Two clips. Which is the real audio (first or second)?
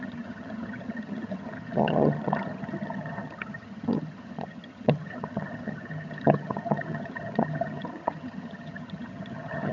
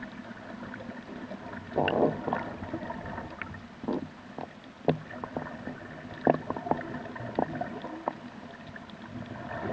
second